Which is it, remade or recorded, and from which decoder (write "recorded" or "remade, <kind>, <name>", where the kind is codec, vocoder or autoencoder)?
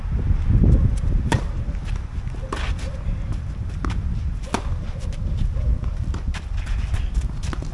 recorded